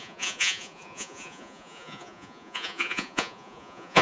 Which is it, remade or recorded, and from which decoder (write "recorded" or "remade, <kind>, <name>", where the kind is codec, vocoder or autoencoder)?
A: remade, vocoder, Vocos